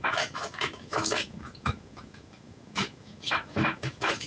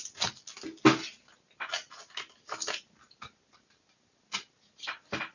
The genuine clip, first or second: second